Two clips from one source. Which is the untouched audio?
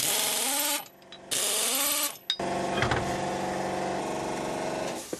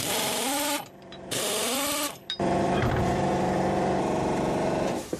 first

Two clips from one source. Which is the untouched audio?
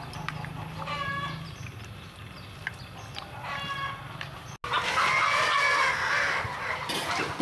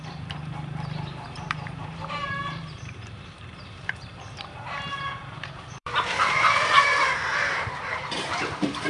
first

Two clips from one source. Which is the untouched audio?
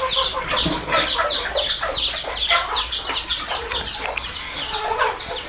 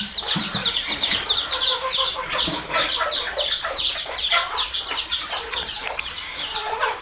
first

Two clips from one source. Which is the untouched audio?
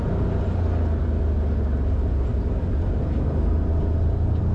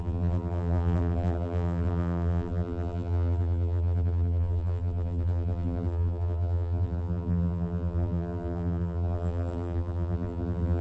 first